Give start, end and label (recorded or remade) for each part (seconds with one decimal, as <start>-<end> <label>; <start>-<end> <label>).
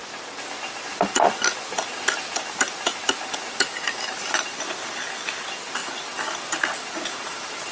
0.0-7.7 recorded